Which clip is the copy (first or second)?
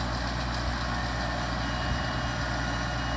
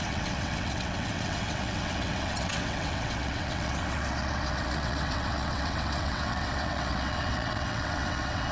second